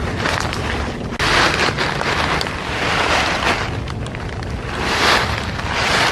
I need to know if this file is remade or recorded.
recorded